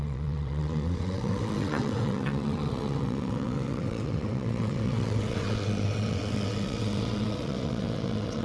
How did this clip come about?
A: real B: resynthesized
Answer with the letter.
B